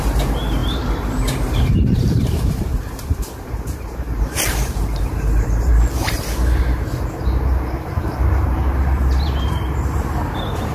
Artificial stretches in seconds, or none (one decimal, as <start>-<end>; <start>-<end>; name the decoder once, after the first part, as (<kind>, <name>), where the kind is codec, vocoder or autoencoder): 0.0-5.7 (vocoder, BigVGAN v2); 8.4-10.7